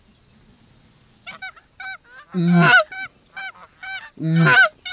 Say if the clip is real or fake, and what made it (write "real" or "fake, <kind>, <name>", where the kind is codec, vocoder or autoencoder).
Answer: real